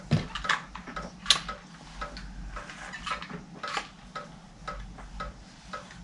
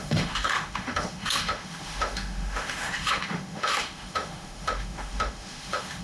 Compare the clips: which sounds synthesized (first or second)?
second